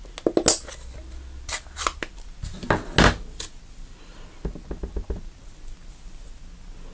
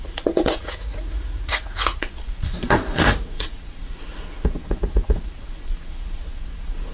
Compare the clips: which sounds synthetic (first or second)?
second